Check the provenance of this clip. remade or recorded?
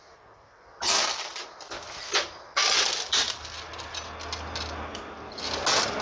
recorded